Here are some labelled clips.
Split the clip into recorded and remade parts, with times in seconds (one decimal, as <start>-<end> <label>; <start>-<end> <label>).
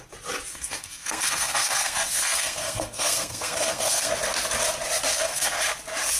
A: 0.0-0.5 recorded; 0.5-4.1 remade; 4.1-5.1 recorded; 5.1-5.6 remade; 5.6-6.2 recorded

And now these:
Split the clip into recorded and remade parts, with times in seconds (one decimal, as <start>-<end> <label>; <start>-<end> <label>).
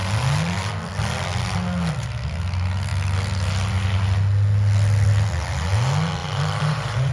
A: 0.0-6.2 recorded; 6.2-7.1 remade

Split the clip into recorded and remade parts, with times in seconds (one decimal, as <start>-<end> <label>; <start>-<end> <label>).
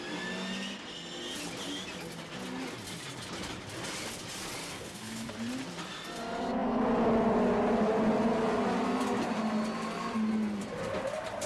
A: 0.0-4.6 recorded; 4.6-5.3 remade; 5.3-11.5 recorded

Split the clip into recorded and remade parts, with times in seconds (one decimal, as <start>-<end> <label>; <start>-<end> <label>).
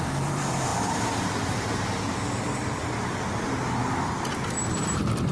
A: 0.0-5.3 remade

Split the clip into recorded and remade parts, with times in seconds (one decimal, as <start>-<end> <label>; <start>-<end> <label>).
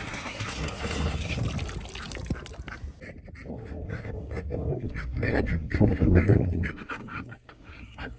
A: 0.0-1.4 remade; 1.4-3.5 recorded; 3.5-8.2 remade